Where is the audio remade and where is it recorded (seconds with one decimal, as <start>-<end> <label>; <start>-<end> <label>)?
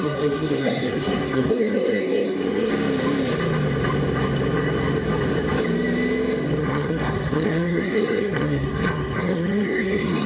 0.0-2.7 remade; 2.7-6.6 recorded; 6.6-10.3 remade